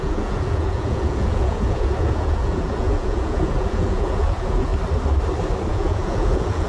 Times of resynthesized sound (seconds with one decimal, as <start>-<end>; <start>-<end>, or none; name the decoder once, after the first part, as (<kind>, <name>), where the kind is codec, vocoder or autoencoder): 0.0-4.7 (vocoder, Vocos); 5.7-6.7